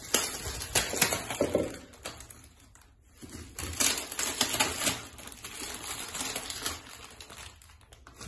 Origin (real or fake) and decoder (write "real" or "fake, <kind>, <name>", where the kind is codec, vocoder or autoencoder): real